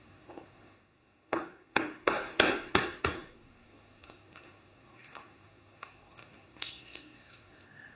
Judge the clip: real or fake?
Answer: fake